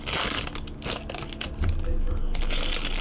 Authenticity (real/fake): real